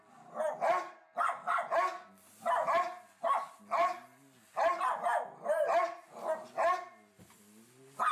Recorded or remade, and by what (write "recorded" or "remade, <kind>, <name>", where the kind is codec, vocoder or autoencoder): recorded